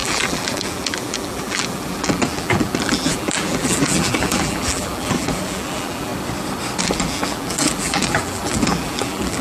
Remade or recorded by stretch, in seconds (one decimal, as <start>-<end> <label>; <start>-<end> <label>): 0.0-6.1 remade; 6.1-6.8 recorded; 6.8-9.4 remade